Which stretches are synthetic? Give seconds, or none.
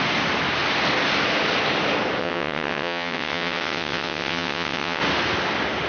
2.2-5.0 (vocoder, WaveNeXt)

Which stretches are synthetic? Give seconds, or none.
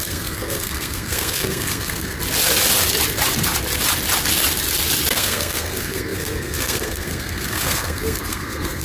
0.0-2.2 (codec, SNAC); 5.1-8.8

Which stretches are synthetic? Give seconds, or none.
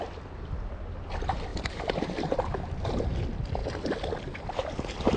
1.5-3.0 (vocoder, BigVGAN v2)